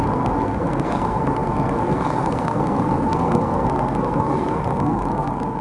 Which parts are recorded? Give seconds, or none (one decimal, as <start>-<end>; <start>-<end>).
none